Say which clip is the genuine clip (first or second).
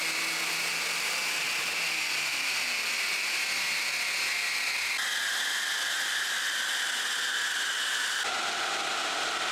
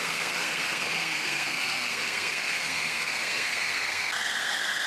first